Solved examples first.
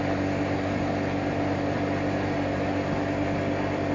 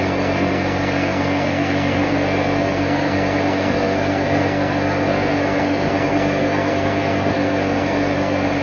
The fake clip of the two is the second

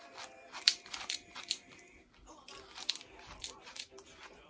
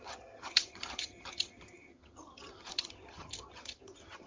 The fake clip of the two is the second